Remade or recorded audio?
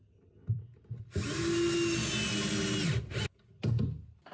recorded